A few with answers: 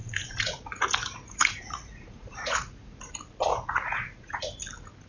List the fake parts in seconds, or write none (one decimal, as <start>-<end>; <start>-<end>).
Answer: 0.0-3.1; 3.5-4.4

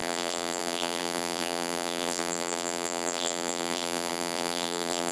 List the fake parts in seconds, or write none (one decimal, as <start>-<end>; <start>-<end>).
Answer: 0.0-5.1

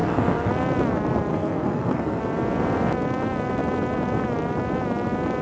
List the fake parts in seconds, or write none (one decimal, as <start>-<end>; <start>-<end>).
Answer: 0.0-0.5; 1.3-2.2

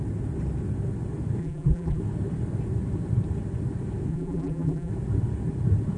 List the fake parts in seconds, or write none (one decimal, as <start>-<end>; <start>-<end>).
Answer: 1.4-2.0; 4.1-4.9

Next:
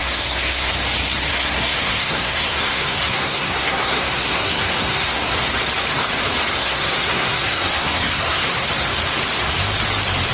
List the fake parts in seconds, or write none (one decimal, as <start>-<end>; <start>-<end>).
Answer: 0.0-0.7; 1.3-5.3; 6.6-8.7